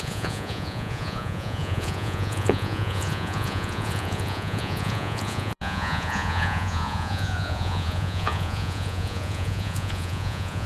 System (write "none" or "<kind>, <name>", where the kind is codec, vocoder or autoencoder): vocoder, Vocos